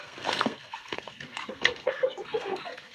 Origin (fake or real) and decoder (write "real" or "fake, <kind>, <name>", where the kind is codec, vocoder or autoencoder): fake, codec, SNAC